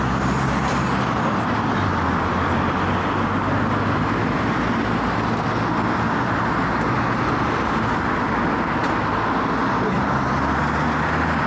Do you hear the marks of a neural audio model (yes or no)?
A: no